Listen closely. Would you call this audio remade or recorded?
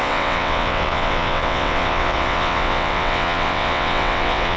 remade